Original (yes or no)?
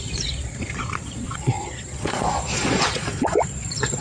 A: no